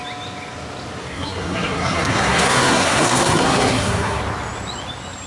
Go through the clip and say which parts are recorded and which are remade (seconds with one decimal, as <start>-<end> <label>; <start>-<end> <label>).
0.0-1.0 recorded; 1.0-4.2 remade; 4.2-5.3 recorded